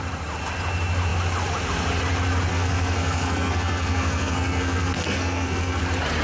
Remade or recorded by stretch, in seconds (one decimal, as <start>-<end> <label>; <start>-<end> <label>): 0.0-2.5 recorded; 2.5-5.8 remade; 5.8-6.2 recorded